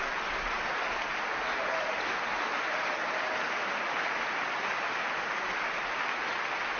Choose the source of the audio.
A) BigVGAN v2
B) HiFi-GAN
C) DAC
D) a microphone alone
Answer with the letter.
D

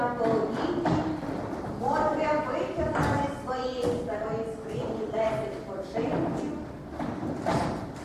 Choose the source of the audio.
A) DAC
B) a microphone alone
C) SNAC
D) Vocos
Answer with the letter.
B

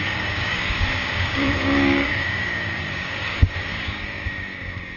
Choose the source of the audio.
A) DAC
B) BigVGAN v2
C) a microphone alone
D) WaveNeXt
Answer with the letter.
A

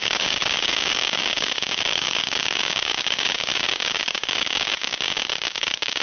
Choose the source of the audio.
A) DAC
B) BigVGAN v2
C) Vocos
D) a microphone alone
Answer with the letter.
A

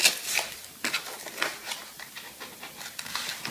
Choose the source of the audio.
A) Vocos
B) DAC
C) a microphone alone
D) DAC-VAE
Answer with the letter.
C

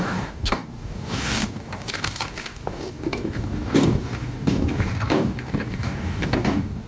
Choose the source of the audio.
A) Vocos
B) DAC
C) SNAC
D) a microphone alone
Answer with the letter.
B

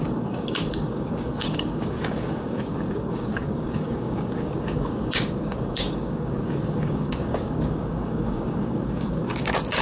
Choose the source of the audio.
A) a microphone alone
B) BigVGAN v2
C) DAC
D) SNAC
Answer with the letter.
C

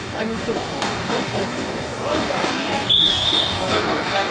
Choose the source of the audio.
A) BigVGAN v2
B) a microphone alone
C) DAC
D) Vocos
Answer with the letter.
C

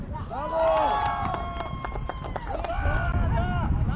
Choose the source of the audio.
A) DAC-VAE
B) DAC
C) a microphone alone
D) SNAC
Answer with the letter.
C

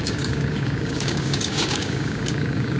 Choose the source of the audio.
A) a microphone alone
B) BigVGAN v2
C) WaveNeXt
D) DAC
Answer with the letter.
D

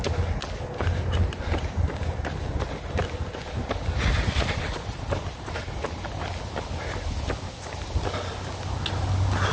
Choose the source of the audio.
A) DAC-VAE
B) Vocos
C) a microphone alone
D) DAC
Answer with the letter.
C